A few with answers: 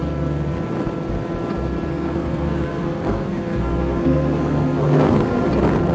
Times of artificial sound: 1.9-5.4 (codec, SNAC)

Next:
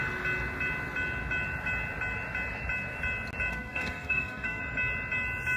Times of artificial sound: 3.5-4.6 (codec, SNAC)

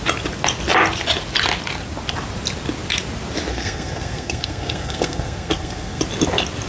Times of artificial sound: 3.5-6.0 (codec, SNAC)

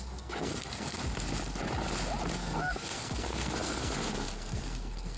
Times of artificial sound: 0.0-1.0 (codec, SNAC); 2.3-5.2

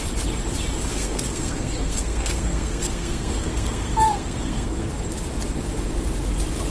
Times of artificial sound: 0.9-4.9 (codec, SNAC)

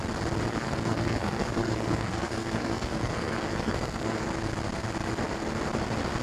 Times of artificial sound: 0.5-4.2 (codec, SNAC)